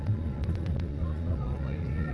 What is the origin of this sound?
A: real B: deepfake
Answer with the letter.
B